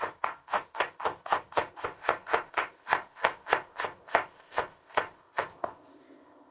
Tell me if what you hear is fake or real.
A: fake